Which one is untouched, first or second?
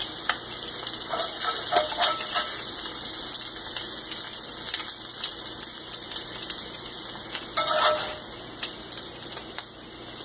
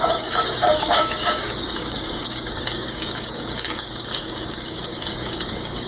first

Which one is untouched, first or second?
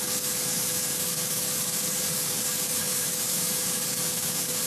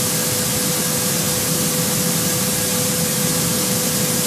second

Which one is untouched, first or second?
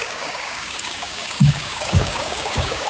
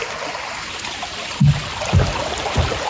second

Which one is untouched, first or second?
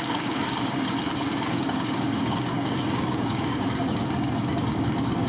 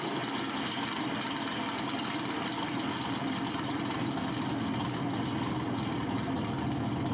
second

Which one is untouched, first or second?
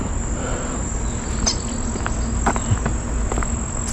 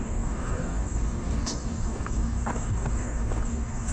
first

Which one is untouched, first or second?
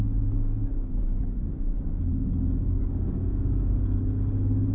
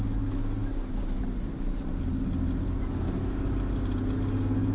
second